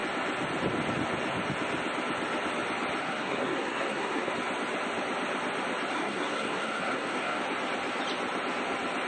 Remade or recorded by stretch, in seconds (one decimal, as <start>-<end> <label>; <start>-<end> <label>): 0.0-3.0 recorded; 3.0-4.3 remade; 4.3-5.9 recorded; 5.9-7.4 remade; 7.4-9.1 recorded